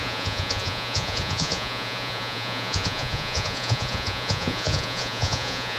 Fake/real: fake